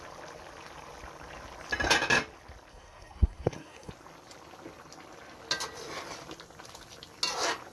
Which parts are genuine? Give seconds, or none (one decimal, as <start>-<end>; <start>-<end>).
0.0-2.7; 3.9-7.7